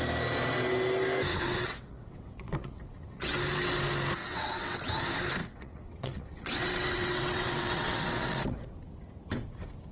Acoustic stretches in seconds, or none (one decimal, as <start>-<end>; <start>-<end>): 0.0-1.3; 3.4-4.2; 4.8-5.4; 8.7-9.9